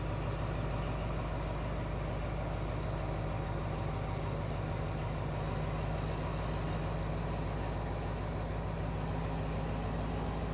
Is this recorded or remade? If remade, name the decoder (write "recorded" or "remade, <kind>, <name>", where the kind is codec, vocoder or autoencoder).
recorded